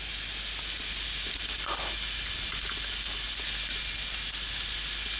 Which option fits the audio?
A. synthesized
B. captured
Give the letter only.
B